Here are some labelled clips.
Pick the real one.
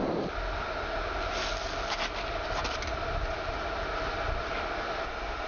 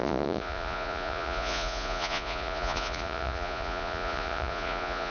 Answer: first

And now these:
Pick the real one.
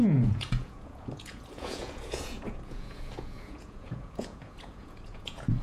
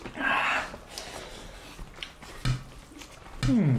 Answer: second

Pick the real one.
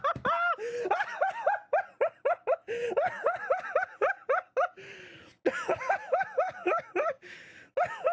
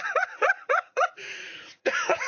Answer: first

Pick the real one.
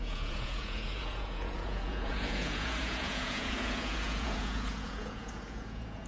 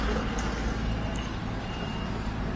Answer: second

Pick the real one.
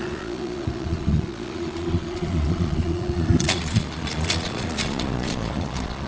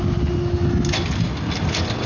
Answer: second